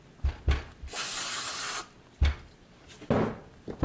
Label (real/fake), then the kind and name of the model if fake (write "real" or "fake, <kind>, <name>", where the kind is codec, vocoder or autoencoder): real